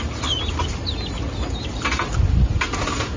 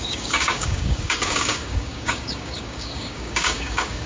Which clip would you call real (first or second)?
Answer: first